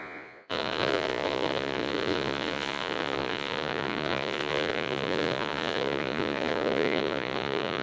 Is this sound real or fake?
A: fake